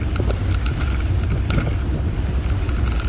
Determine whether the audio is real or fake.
real